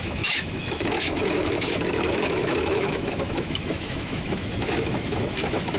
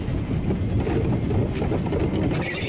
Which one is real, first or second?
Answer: second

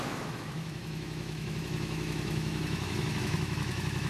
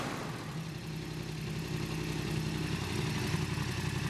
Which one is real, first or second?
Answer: second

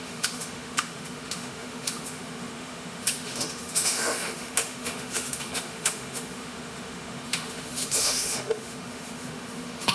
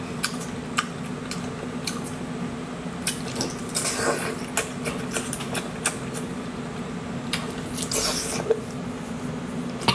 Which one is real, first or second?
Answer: second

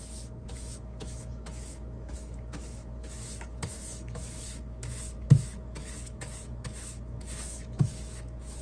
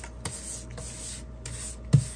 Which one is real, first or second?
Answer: second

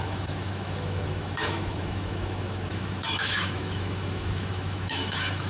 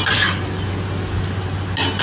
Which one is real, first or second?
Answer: second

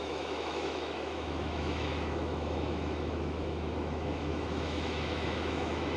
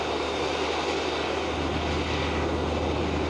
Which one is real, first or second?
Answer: second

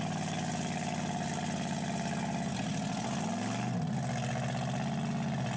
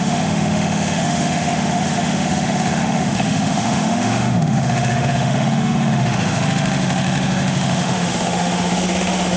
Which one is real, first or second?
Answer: first